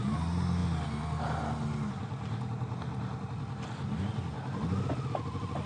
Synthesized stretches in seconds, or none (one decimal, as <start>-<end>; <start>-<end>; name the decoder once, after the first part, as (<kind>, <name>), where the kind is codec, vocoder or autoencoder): none